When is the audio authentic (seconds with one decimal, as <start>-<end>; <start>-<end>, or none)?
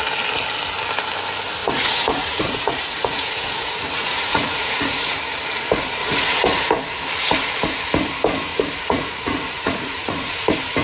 0.0-1.6; 5.2-6.0; 6.7-8.5; 10.4-10.8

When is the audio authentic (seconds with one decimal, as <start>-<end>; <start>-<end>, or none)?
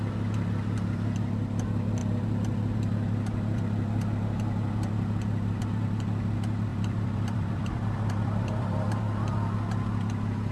0.0-6.7; 9.0-10.5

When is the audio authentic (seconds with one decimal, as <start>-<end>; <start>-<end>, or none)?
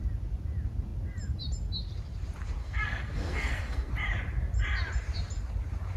0.0-2.6; 3.9-6.0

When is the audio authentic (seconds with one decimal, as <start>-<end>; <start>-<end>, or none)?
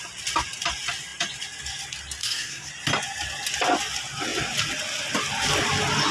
0.0-2.2; 2.7-6.1